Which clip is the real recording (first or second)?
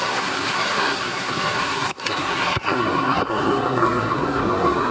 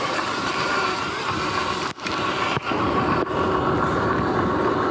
second